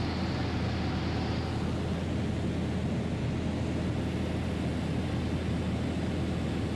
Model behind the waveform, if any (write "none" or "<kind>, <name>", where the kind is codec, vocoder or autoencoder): none